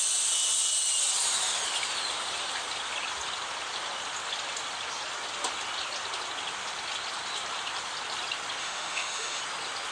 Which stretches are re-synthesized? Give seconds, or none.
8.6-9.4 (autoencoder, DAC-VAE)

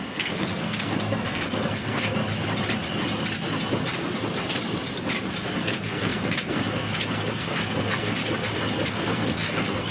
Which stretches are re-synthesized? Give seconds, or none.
0.0-2.2 (codec, SNAC); 5.6-8.2; 8.9-9.9

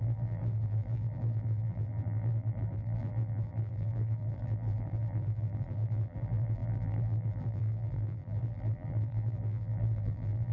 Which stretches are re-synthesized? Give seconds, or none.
0.0-10.5 (vocoder, BigVGAN v2)

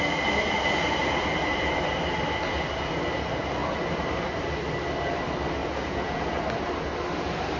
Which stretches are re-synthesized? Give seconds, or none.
5.6-6.4 (vocoder, Vocos)

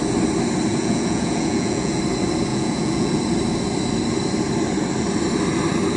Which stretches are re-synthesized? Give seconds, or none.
0.7-2.0 (vocoder, Vocos); 2.5-3.2

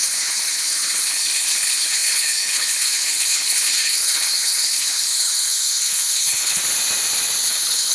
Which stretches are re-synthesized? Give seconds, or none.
0.0-6.6 (codec, HILCodec); 7.5-7.9

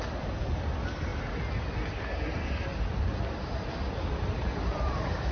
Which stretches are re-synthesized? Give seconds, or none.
none